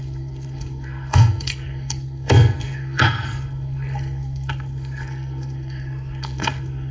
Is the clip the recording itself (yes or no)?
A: no